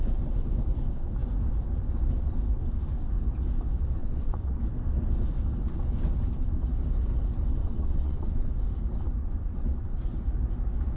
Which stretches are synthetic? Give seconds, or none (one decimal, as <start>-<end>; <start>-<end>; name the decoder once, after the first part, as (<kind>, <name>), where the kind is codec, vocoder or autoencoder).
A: 4.0-4.6 (vocoder, WaveNeXt); 7.6-8.5; 9.2-10.0